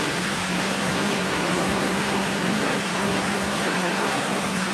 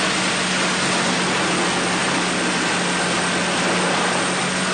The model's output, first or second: first